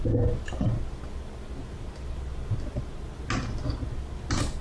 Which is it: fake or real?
real